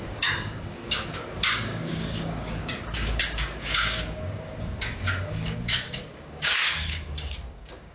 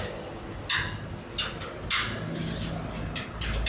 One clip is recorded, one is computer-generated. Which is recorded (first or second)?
second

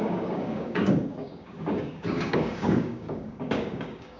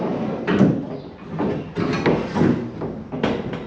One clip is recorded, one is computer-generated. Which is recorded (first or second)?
second